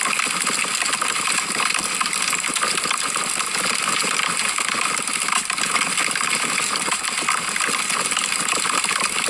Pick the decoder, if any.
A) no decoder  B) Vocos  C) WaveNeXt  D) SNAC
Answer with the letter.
A